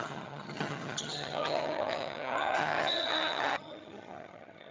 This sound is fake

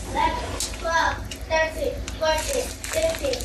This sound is real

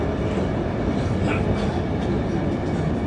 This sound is real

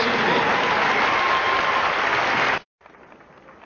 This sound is real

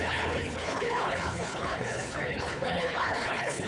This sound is fake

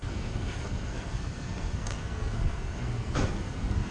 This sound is fake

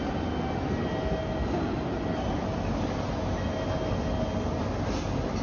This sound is real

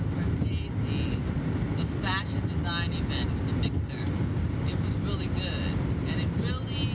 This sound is real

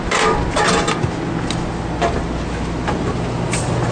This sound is real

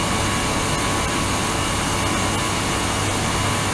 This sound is real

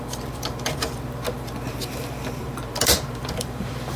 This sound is fake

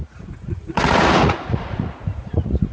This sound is fake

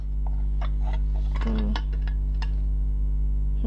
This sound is real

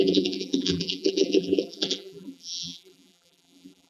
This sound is fake